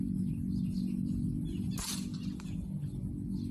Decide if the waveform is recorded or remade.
recorded